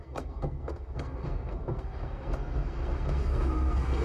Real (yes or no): no